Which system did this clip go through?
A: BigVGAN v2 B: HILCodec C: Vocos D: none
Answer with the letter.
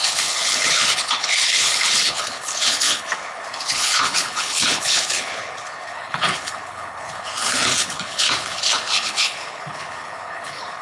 B